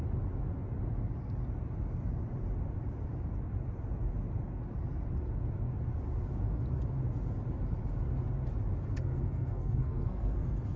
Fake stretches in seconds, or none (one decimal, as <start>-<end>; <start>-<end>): 8.9-10.8